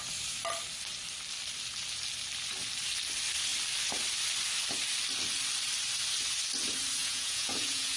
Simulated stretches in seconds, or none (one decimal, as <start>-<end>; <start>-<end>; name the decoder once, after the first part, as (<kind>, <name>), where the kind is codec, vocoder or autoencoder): 7.0-8.0 (vocoder, Vocos)